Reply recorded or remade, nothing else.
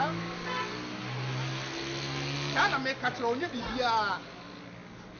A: recorded